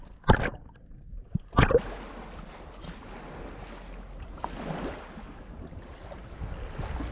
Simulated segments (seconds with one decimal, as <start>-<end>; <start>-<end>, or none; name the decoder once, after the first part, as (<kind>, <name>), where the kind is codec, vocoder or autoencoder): none